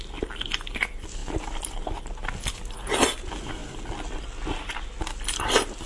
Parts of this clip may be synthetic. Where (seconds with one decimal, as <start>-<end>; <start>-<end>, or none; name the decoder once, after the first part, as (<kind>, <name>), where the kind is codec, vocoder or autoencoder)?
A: none